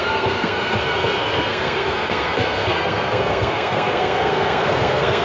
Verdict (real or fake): fake